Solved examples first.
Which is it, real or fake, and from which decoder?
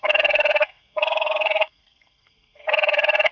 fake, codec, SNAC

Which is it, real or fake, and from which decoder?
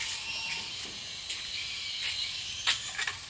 real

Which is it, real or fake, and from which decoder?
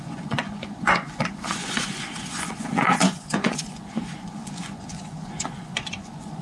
fake, vocoder, Vocos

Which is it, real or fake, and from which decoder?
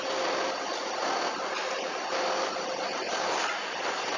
real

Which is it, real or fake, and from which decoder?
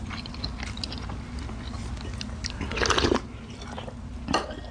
real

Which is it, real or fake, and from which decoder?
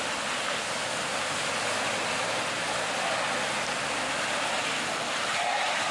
real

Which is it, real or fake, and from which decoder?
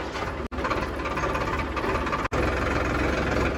real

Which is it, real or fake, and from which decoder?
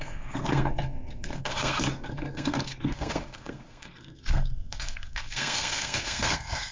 fake, codec, SNAC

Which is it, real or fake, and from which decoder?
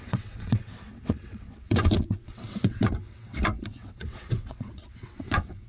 fake, vocoder, WaveNeXt